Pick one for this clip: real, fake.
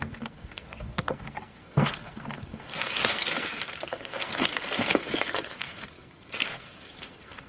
fake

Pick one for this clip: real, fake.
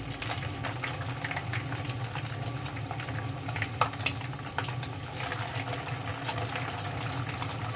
real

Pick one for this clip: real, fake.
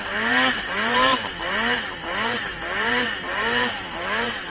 fake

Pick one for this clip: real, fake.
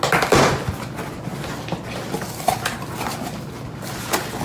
real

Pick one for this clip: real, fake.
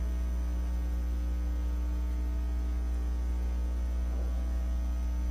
real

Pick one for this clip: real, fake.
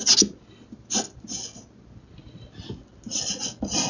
real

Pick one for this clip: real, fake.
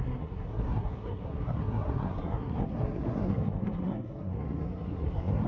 fake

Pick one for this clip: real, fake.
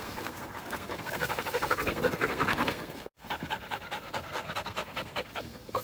fake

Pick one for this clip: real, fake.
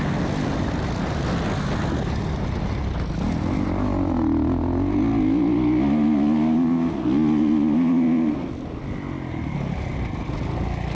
real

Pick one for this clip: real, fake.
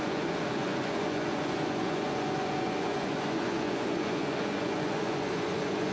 fake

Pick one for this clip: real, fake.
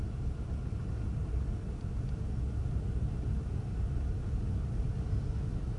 real